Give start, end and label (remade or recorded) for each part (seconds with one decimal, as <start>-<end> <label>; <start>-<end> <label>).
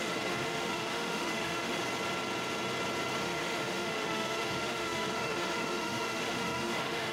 0.0-1.8 remade; 1.8-3.2 recorded; 3.2-7.1 remade